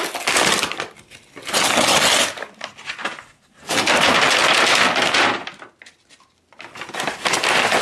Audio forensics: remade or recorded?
recorded